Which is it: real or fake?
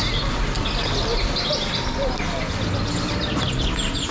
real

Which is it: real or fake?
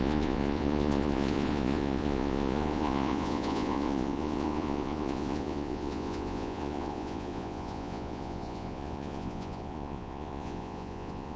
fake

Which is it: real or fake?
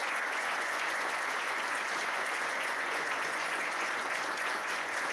fake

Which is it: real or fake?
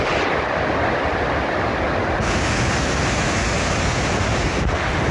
real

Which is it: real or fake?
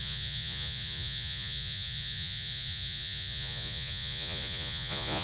fake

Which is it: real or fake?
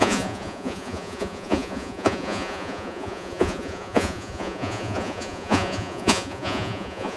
fake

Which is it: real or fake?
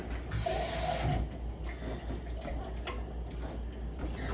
real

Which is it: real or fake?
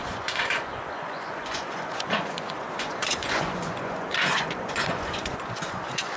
fake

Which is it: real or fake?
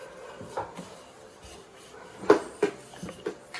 real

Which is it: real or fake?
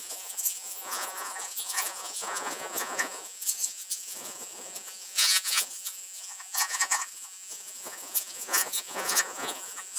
fake